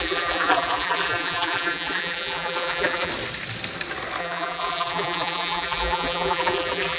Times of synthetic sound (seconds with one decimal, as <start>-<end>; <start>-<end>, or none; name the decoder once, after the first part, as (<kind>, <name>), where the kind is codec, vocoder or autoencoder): 0.0-3.1 (vocoder, BigVGAN v2); 4.2-7.0